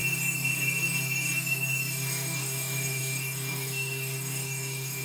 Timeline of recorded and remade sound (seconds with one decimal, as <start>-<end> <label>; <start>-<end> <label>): 0.0-5.0 remade

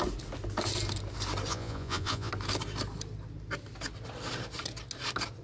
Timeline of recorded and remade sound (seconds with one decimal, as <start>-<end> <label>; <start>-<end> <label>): 0.0-1.5 recorded; 1.5-2.3 remade; 2.3-5.4 recorded